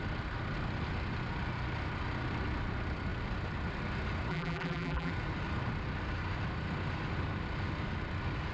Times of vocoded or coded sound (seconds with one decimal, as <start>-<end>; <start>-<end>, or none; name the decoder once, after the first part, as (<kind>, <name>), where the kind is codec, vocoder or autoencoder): 4.3-5.1 (vocoder, BigVGAN v2)